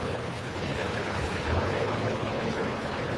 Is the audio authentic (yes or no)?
no